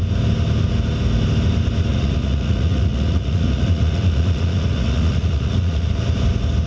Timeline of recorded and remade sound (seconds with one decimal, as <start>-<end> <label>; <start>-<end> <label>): 0.0-1.9 recorded; 1.9-5.9 remade; 5.9-6.7 recorded